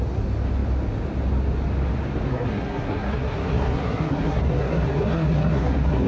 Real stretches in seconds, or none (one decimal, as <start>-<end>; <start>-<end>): 0.0-2.3